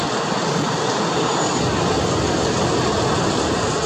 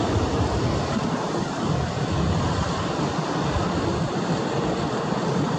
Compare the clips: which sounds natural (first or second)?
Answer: first